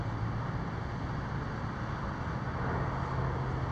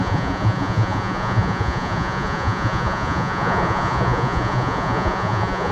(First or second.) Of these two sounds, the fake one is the second